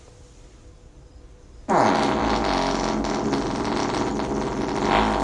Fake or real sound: real